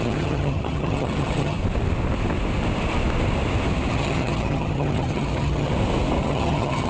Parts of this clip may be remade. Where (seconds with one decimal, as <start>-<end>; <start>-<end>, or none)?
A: 0.0-1.6; 3.9-5.7; 6.2-6.9